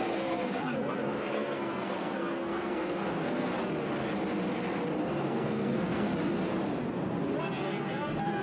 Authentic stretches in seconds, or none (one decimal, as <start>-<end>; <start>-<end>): 3.5-5.0; 6.1-7.4